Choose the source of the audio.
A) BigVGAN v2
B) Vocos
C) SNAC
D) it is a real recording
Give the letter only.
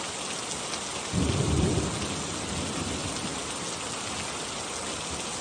D